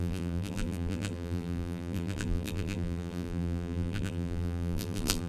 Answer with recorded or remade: remade